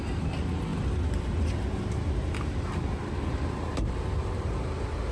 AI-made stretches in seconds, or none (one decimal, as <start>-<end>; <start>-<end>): none